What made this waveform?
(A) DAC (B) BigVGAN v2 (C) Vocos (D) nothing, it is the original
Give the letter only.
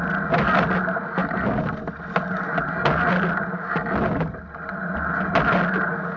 D